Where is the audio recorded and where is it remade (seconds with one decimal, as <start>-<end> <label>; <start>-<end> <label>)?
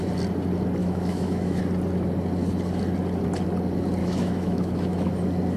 0.0-0.8 recorded; 0.8-1.6 remade; 1.6-4.0 recorded; 4.0-5.1 remade; 5.1-5.6 recorded